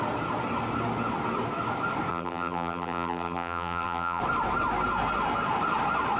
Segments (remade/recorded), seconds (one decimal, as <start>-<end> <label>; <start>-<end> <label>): 0.0-2.1 recorded; 2.1-4.2 remade; 4.2-6.2 recorded